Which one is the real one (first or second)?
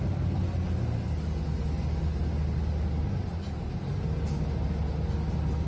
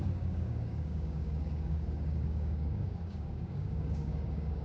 first